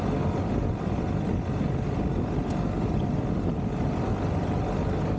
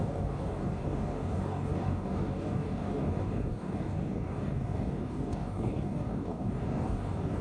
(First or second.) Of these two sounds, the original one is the first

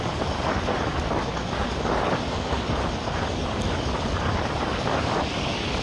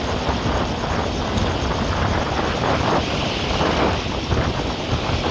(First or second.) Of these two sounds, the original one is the second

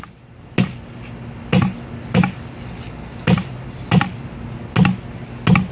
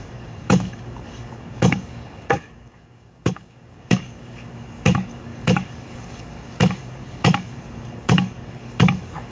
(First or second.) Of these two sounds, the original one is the first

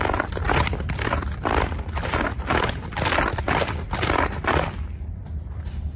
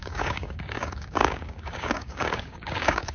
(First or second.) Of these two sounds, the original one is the first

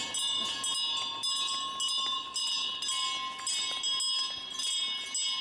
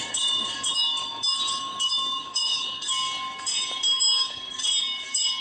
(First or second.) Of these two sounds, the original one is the first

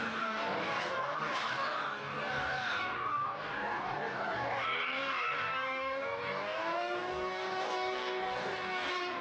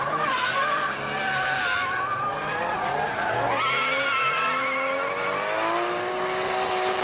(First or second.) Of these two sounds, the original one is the second